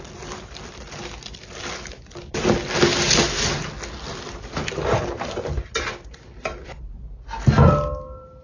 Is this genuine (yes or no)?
yes